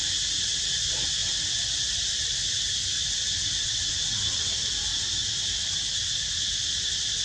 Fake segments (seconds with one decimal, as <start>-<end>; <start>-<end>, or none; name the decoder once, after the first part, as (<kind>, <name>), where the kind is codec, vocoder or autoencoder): 0.0-4.9 (vocoder, BigVGAN v2); 5.4-7.2